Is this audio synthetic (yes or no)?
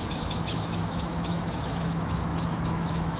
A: yes